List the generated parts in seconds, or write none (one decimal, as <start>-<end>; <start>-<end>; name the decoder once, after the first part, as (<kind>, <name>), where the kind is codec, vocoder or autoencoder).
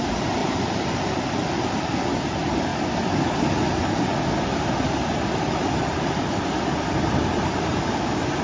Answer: 0.0-2.7 (vocoder, BigVGAN v2); 4.5-8.4